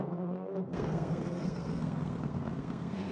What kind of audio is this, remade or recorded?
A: remade